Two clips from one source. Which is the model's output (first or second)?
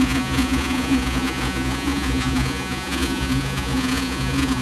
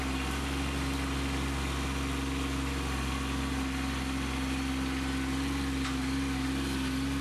first